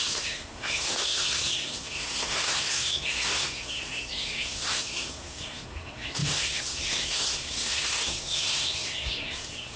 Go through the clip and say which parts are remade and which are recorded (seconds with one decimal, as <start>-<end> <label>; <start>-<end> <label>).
0.0-9.8 remade